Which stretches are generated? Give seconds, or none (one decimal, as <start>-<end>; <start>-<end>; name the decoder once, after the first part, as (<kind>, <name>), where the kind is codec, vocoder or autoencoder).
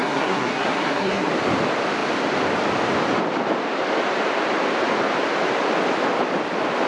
0.0-1.3 (codec, SNAC)